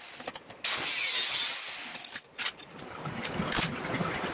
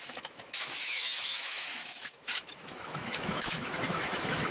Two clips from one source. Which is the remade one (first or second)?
second